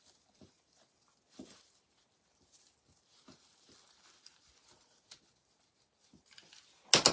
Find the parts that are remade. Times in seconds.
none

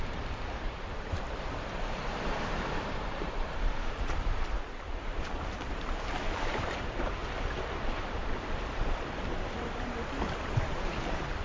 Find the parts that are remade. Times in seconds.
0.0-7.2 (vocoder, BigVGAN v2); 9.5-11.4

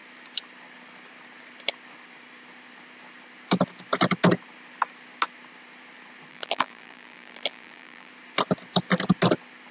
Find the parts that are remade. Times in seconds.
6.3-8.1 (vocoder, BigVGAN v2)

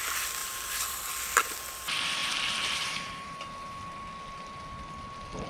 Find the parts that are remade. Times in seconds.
0.4-1.1 (vocoder, BigVGAN v2); 2.2-3.3

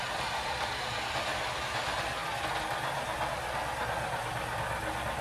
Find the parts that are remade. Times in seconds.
0.0-2.2 (vocoder, BigVGAN v2)

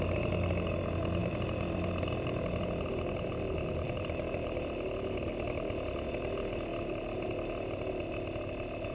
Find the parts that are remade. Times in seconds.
1.2-5.3 (vocoder, BigVGAN v2)

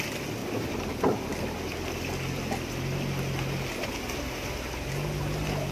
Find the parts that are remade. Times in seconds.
0.4-0.9 (vocoder, BigVGAN v2)